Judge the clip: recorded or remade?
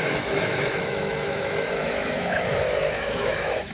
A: remade